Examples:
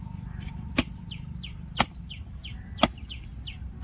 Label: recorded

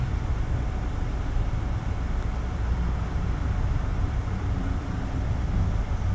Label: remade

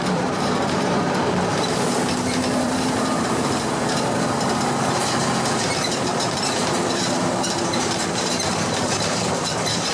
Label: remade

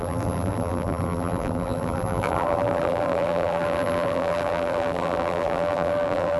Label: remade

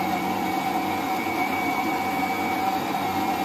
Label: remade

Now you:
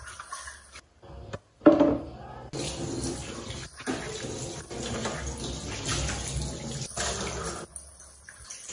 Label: recorded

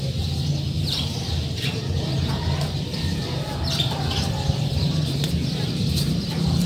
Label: remade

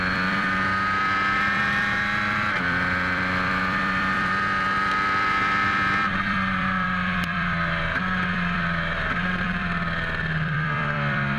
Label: remade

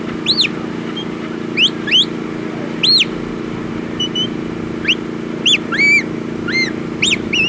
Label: recorded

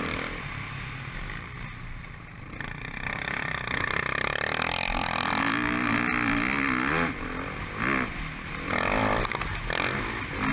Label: recorded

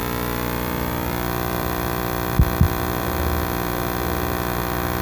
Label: remade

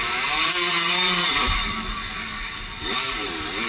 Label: remade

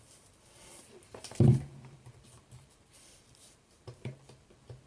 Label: remade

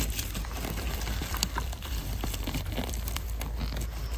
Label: remade